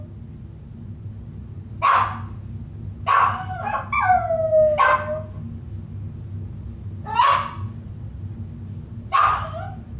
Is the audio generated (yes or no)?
no